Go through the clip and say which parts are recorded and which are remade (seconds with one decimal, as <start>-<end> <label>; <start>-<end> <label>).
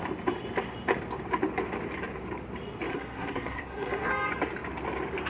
0.0-2.9 recorded; 2.9-4.1 remade; 4.1-5.3 recorded